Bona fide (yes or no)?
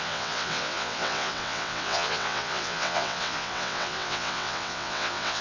no